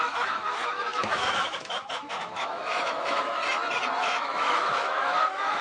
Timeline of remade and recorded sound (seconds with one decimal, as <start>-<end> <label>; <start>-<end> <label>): 0.0-3.4 remade; 3.4-4.0 recorded; 4.0-5.6 remade